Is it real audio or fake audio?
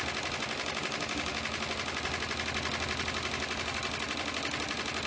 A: real